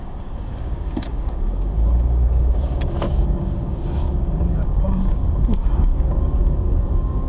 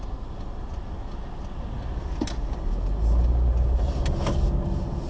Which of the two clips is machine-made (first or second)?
first